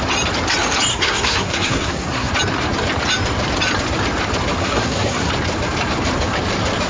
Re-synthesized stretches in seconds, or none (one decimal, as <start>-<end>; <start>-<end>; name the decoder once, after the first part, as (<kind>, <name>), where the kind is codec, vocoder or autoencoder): 0.9-2.3 (codec, SNAC); 4.6-5.3